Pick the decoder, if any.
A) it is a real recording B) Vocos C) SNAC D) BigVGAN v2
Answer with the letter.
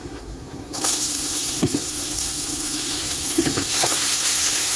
C